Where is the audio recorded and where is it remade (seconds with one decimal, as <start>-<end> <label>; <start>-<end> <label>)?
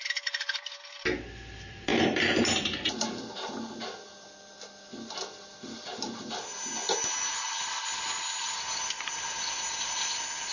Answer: 0.0-10.5 recorded